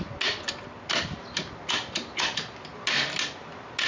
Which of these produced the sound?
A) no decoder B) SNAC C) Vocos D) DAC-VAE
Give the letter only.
A